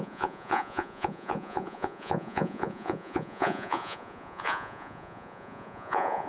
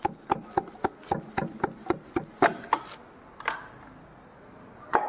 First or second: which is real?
second